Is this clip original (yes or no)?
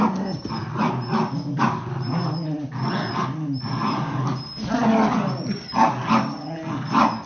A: yes